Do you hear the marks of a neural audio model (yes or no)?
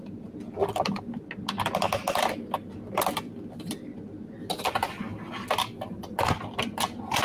no